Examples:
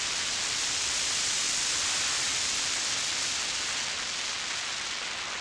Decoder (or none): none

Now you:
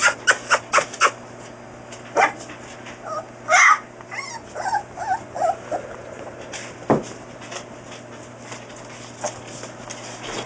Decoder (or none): none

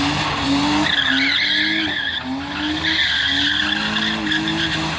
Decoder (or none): none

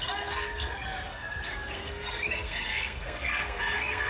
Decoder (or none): codec, SNAC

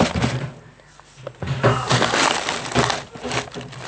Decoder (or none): none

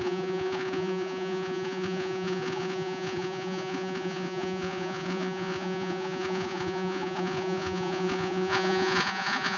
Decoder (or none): vocoder, Vocos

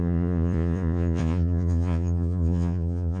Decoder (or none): vocoder, Vocos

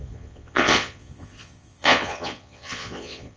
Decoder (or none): vocoder, Vocos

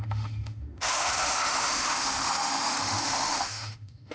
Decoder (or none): autoencoder, DAC-VAE